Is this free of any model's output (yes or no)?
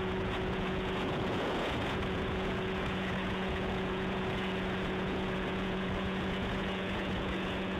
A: no